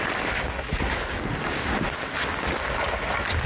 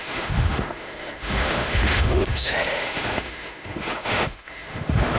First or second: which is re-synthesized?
second